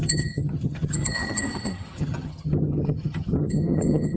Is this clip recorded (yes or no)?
no